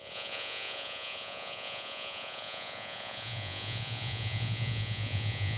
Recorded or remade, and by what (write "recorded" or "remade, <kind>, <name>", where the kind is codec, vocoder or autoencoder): remade, vocoder, Vocos